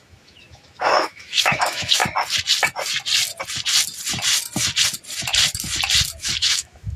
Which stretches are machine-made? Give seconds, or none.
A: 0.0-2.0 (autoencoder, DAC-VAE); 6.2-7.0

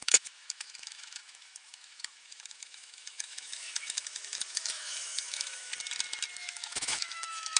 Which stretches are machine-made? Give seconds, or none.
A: 0.0-5.7 (autoencoder, DAC-VAE); 6.4-7.6

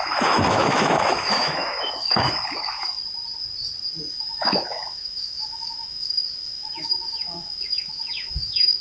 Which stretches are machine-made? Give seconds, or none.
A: 0.0-3.0 (autoencoder, DAC-VAE); 4.1-8.8